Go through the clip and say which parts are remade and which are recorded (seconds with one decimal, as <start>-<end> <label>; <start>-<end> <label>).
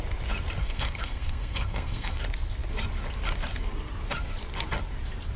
0.0-0.6 recorded; 0.6-2.2 remade; 2.2-5.4 recorded